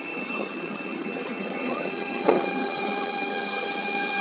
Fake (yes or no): yes